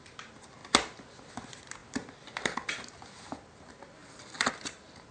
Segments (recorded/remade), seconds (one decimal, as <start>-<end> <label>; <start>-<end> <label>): 0.0-5.1 recorded